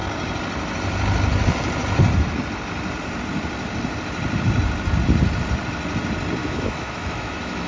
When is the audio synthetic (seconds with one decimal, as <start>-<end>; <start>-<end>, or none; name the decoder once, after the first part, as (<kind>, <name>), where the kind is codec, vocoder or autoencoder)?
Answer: 6.4-7.7 (autoencoder, DAC-VAE)